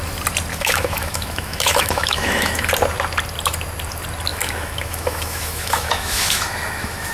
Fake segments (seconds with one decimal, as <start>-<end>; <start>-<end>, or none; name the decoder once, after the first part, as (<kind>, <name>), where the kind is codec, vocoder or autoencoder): 0.5-2.7 (autoencoder, DAC-VAE); 4.3-7.1